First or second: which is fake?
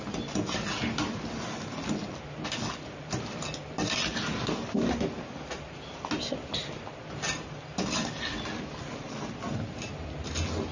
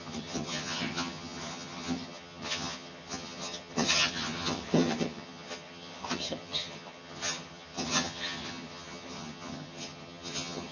second